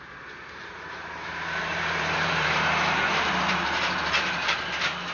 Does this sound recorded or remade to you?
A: remade